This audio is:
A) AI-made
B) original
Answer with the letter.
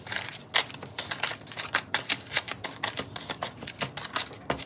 B